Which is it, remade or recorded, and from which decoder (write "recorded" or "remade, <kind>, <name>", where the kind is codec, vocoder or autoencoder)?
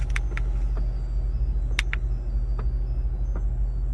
recorded